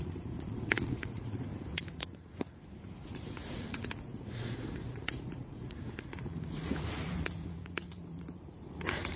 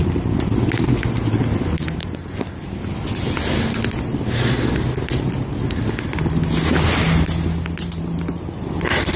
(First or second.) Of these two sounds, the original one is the second